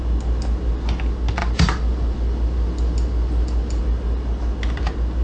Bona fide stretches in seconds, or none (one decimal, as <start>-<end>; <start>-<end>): 0.0-1.4; 3.8-5.2